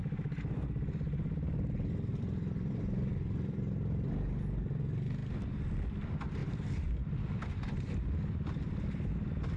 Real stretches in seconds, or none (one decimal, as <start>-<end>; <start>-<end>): 0.0-2.1; 3.6-6.4; 7.9-9.6